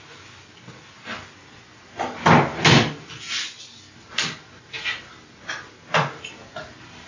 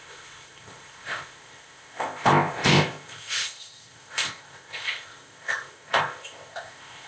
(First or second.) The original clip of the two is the first